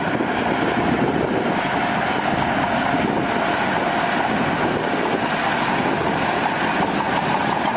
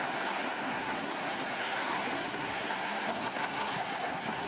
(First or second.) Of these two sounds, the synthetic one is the second